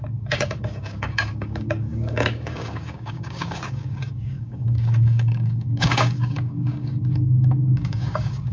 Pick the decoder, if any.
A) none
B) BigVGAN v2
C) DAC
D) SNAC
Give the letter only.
C